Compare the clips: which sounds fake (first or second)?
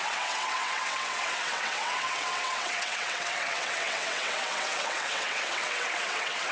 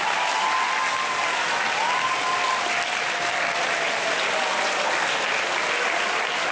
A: first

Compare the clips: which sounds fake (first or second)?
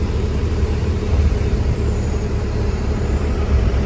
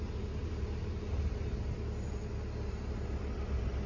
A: first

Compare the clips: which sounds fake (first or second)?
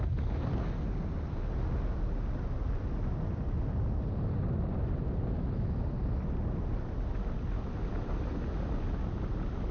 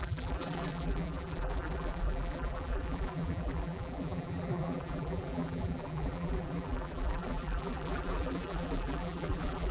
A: second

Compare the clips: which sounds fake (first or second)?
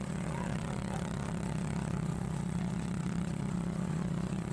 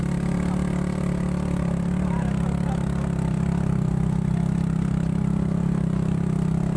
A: first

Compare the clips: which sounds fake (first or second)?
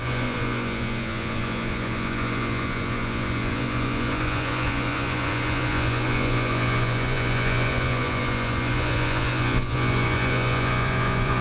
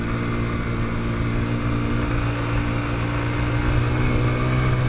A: first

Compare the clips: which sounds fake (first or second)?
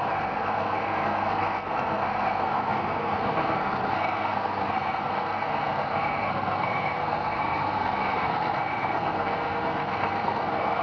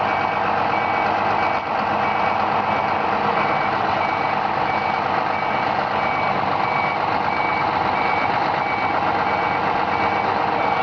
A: first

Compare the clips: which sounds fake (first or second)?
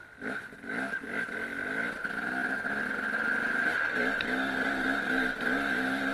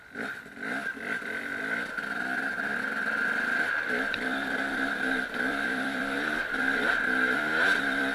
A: second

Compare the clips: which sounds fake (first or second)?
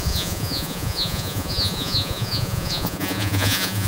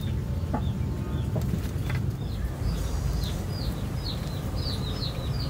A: first